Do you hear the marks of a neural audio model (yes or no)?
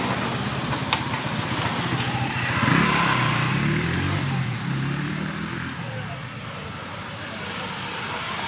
no